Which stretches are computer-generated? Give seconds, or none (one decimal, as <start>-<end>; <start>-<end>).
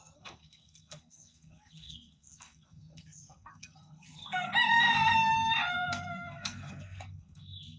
0.0-4.5; 5.7-7.8